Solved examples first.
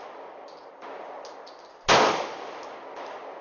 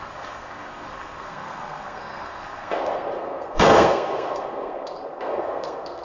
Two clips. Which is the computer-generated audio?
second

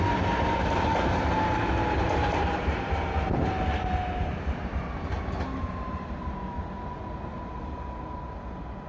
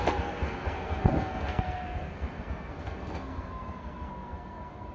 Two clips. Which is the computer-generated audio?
second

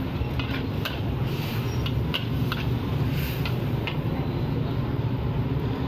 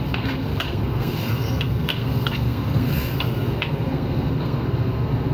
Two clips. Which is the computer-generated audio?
second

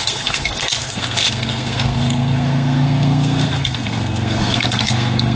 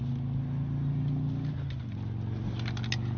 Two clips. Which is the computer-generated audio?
first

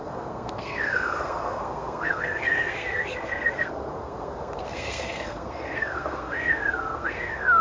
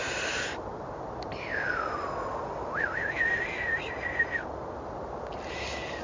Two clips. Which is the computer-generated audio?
first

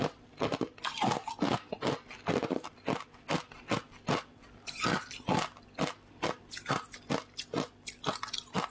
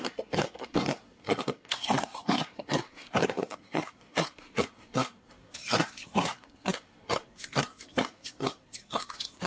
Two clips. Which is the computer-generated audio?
second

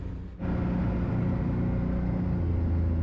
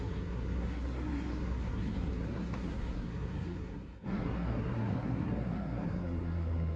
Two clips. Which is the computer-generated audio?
second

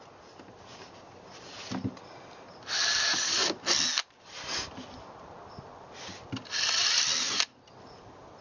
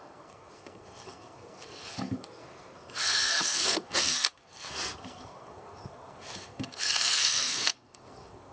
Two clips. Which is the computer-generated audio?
second